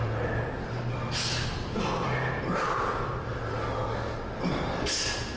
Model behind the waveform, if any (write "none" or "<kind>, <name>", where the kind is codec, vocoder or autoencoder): none